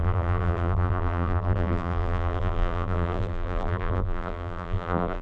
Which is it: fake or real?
fake